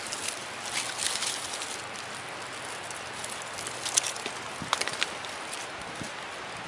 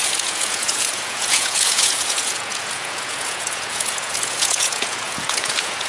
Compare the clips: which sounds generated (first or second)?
second